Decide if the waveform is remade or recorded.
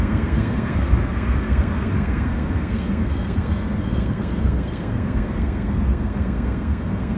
remade